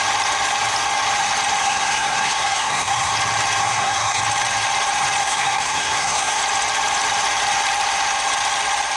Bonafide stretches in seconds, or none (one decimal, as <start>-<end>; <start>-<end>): 0.0-1.6; 3.1-3.6; 4.2-5.2; 6.4-9.0

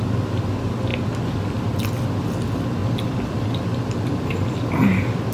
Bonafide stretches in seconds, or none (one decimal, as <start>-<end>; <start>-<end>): 0.0-5.3

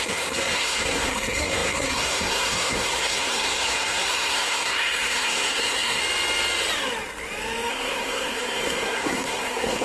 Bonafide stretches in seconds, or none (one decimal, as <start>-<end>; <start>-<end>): 6.0-7.7

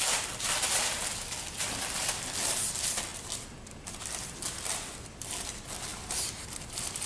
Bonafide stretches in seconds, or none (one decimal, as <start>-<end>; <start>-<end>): 0.0-7.1

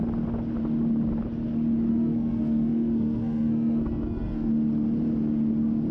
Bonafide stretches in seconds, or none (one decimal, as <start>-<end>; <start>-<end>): 0.0-1.9; 4.5-5.9

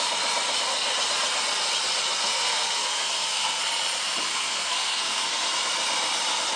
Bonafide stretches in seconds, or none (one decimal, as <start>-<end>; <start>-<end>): 0.0-2.2; 3.6-4.3; 5.5-6.6